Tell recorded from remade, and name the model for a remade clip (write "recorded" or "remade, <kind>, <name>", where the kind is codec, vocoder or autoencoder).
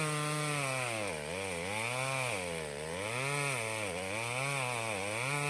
recorded